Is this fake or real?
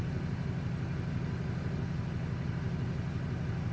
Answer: real